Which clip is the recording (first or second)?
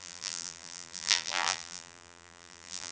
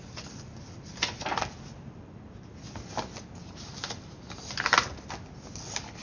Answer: second